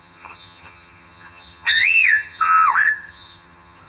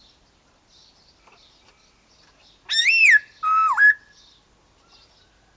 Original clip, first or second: second